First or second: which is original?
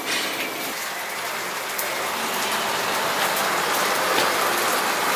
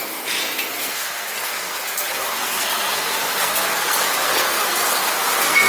first